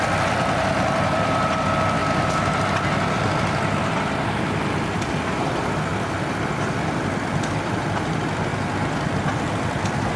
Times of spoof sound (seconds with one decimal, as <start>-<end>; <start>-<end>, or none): 0.0-2.0; 3.8-5.9; 6.8-8.5